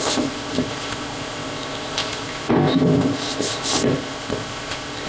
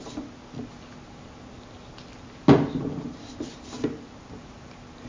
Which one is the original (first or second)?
second